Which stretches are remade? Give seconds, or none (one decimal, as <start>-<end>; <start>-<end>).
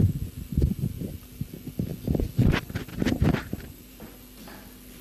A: 2.9-4.0